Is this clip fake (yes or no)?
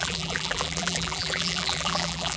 yes